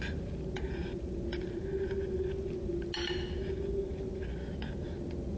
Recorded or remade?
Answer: recorded